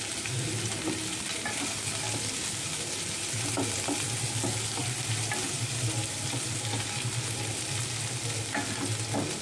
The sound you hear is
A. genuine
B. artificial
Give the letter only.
A